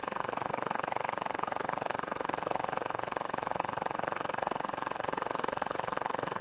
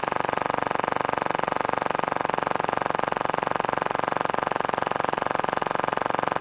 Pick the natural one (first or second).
second